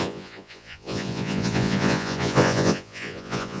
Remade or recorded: remade